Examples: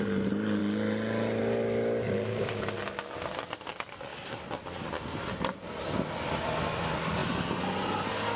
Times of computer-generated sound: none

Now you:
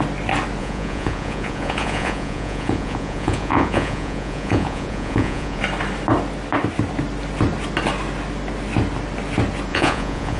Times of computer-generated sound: 0.6-5.6; 9.7-10.4

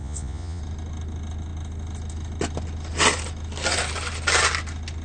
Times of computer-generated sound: 0.0-0.6

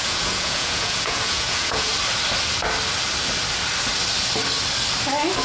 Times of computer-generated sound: 0.0-1.9

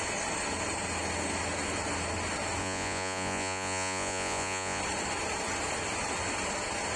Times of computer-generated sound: 2.6-4.8